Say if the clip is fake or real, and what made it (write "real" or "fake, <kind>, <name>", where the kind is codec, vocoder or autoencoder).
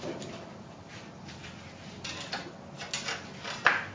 real